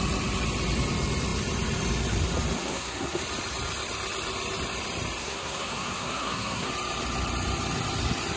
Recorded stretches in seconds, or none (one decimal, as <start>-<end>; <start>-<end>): 0.0-2.6; 3.2-5.2; 6.7-8.4